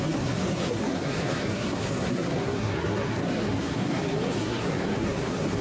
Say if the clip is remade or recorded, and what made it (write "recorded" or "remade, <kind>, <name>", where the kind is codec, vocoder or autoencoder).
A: remade, codec, SNAC